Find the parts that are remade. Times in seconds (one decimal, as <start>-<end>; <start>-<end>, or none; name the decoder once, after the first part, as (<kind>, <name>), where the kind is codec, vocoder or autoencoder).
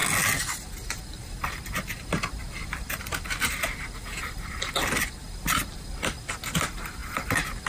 none